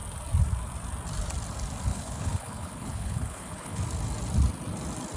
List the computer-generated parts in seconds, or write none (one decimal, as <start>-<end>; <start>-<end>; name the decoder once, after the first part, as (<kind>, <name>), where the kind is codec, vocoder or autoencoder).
1.9-3.8 (codec, HILCodec)